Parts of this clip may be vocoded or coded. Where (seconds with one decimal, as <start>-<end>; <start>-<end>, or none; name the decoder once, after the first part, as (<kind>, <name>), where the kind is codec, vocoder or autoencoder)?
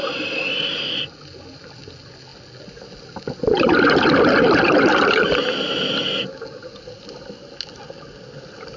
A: none